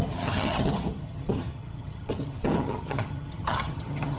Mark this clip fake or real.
fake